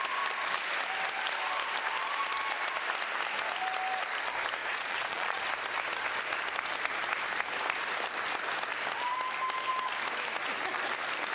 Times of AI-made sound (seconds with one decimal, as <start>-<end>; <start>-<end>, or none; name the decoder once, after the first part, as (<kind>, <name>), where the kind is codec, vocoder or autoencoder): 4.6-5.4 (vocoder, Vocos)